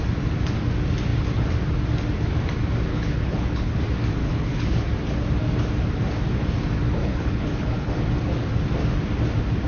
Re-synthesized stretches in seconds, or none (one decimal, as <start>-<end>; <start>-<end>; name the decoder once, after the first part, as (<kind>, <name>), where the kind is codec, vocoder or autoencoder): 2.9-3.8 (codec, HILCodec); 4.2-4.9; 7.0-7.9